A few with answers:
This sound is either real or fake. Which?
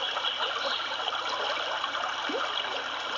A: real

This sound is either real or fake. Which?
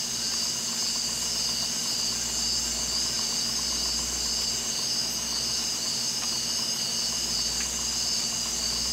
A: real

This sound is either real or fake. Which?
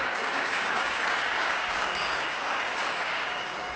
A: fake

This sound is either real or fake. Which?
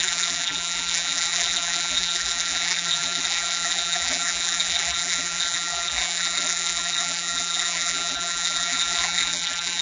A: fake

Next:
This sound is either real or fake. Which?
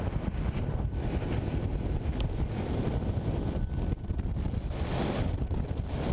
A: fake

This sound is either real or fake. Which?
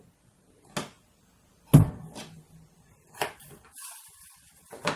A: real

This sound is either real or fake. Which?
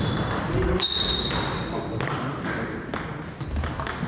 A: real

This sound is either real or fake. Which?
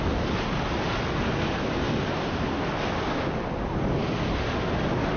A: real